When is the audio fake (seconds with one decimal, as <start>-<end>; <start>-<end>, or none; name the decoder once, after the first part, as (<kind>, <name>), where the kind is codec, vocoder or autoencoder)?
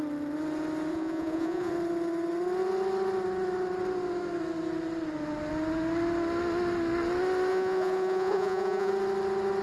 0.9-1.7 (vocoder, Vocos); 7.5-8.9